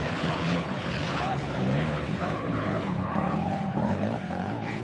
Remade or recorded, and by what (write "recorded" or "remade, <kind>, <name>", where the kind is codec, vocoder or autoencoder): remade, codec, HILCodec